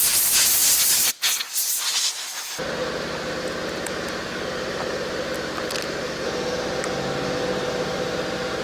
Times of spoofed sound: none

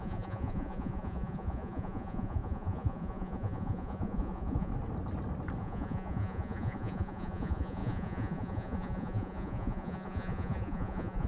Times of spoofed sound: 0.0-4.7 (vocoder, Vocos); 5.6-11.3

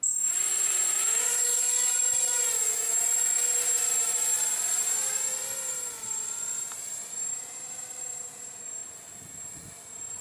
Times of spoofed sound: none

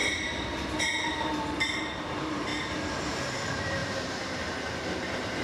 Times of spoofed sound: 0.0-2.5 (vocoder, BigVGAN v2); 3.1-5.4

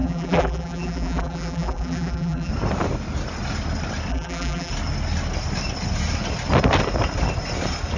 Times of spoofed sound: 0.0-2.5 (vocoder, BigVGAN v2); 4.1-4.7